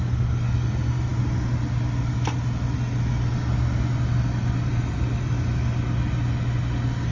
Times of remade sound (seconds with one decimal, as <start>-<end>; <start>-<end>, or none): none